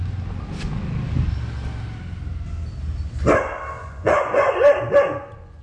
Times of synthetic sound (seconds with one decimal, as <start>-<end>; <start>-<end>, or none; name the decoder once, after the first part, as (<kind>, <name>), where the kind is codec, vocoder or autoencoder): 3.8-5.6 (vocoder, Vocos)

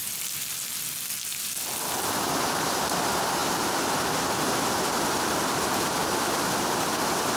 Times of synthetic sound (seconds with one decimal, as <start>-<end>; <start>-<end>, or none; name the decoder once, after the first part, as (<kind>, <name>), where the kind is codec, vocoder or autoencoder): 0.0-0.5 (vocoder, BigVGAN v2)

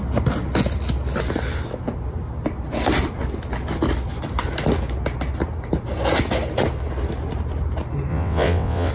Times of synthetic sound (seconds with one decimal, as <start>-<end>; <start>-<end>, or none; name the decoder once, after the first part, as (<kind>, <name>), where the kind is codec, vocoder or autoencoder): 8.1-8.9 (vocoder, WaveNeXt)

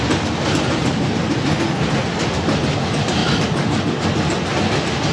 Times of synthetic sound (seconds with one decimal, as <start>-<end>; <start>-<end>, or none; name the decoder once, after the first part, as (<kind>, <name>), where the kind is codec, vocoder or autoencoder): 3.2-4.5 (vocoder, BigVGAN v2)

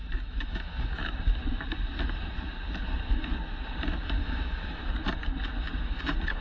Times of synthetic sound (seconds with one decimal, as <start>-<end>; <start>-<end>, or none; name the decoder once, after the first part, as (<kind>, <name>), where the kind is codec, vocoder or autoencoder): 0.0-1.3 (autoencoder, DAC-VAE); 4.2-4.8; 5.8-6.4

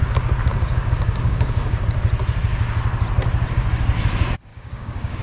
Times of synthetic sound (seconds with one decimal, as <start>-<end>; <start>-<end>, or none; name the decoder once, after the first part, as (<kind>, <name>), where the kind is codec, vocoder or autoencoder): 0.5-1.8 (codec, DAC); 4.5-5.2

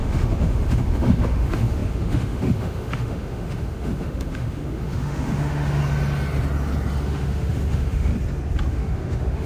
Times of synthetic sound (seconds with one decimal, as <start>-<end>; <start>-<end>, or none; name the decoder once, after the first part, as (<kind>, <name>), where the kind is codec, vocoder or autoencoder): 0.0-5.8 (autoencoder, DAC-VAE); 7.0-8.1; 8.7-9.5